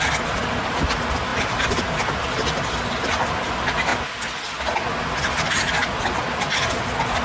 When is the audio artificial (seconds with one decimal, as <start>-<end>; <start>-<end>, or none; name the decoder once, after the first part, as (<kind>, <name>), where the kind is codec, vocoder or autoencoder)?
none